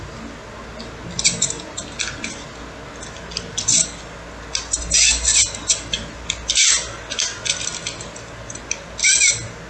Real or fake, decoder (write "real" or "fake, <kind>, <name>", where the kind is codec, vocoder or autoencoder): real